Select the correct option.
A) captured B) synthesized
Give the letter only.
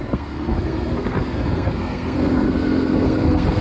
B